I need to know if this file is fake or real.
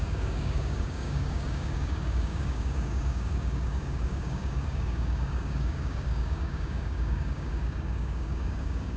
fake